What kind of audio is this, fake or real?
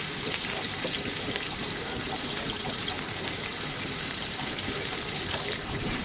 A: fake